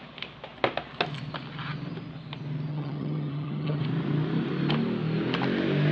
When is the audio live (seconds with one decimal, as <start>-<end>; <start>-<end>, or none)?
0.0-2.7; 3.8-5.9